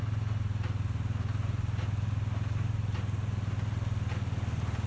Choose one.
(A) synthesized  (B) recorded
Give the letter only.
B